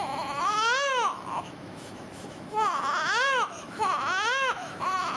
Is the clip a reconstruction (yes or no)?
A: yes